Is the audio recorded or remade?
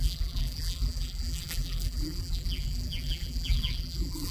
remade